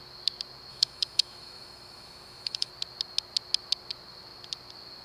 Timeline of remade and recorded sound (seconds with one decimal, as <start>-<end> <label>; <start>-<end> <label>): 0.0-0.7 recorded; 0.7-2.7 remade; 2.7-5.0 recorded